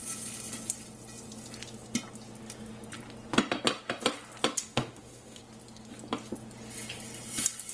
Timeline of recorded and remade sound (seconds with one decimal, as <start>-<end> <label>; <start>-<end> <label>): 0.0-4.6 recorded; 4.6-5.4 remade; 5.4-7.7 recorded